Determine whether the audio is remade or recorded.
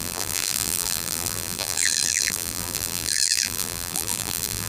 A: remade